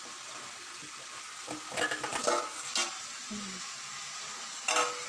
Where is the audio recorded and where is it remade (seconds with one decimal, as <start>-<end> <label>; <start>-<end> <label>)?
0.0-5.1 recorded